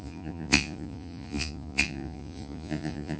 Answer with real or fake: fake